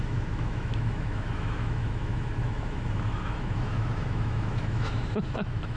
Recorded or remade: remade